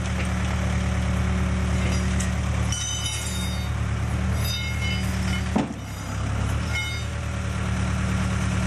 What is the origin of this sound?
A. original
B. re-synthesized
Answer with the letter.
A